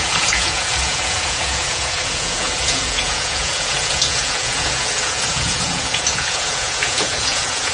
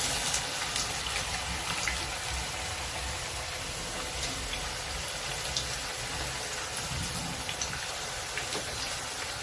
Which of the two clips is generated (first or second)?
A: first